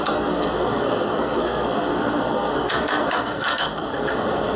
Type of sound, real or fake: fake